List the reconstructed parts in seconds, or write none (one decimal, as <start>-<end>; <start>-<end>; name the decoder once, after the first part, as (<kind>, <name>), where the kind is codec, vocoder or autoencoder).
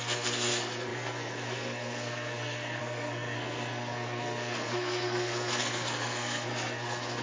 0.0-7.2 (codec, SNAC)